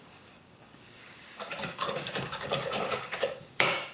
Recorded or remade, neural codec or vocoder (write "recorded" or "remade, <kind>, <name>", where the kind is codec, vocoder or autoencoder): remade, codec, DAC